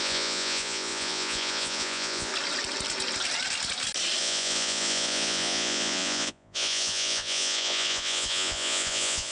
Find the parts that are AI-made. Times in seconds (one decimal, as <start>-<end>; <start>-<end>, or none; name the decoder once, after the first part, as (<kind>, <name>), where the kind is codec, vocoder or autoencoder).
0.0-2.3 (vocoder, Vocos); 4.2-9.3